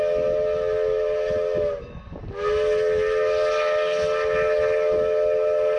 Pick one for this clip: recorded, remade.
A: recorded